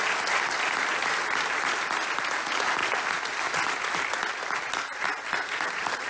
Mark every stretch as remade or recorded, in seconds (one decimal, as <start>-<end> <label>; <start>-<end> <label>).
0.0-6.1 recorded